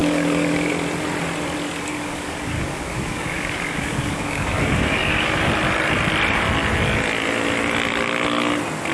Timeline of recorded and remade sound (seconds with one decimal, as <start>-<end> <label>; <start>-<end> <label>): 0.0-0.7 remade; 0.7-1.9 recorded; 1.9-5.5 remade; 5.5-8.9 recorded